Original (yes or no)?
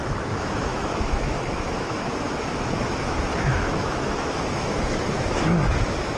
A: no